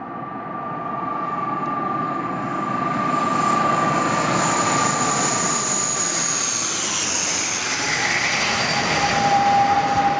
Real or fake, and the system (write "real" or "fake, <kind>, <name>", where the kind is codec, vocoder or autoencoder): real